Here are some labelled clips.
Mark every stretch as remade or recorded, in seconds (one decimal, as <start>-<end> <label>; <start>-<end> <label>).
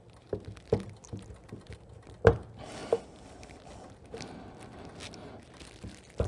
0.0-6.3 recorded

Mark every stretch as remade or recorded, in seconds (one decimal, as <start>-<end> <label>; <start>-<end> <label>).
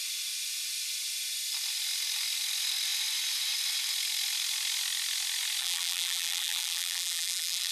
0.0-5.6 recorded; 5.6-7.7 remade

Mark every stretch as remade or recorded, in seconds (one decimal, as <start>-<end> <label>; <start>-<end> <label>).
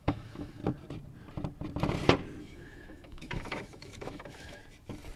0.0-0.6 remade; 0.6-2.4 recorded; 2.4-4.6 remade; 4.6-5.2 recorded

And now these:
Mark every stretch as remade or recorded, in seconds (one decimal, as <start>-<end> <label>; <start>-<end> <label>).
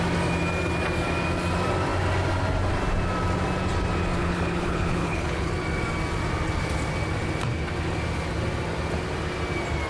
0.0-4.2 recorded; 4.2-5.5 remade; 5.5-9.9 recorded